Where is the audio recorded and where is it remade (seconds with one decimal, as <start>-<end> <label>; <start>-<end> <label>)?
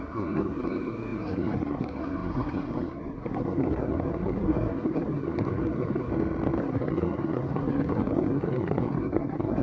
0.0-6.1 remade; 6.1-6.6 recorded; 6.6-9.6 remade